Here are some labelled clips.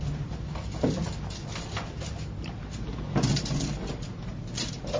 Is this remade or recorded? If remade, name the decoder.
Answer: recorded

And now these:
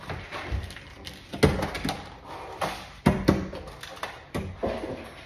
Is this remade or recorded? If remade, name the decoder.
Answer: recorded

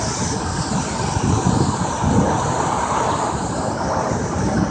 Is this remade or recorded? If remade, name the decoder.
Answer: recorded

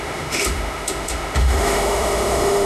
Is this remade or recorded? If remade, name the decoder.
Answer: remade, autoencoder, DAC-VAE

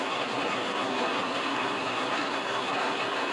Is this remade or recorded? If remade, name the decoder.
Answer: remade, codec, SNAC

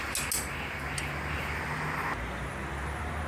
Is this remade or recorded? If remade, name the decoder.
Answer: recorded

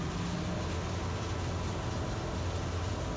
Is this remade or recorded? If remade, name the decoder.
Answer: recorded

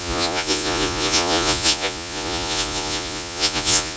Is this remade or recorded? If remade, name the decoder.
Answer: remade, vocoder, Vocos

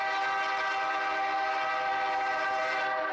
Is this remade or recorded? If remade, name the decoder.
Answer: recorded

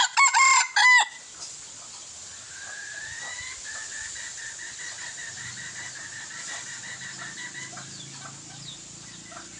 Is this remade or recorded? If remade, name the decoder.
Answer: recorded